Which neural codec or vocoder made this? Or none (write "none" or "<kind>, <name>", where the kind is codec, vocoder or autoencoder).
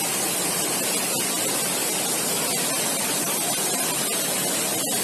none